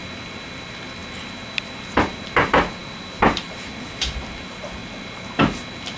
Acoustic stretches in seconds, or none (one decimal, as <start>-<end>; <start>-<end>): 4.8-6.0

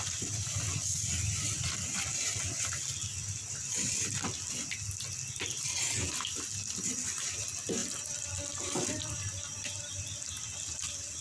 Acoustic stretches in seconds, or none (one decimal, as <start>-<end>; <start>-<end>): 0.0-7.8; 9.8-11.2

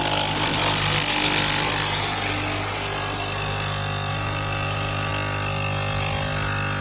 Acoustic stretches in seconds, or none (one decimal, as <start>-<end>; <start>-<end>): 0.0-4.1; 5.1-6.8

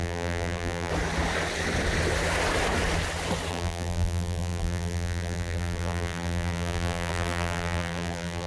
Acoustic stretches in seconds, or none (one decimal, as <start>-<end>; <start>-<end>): 0.9-3.5

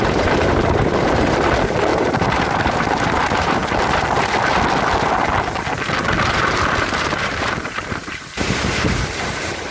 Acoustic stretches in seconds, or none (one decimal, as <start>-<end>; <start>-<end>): 3.6-6.2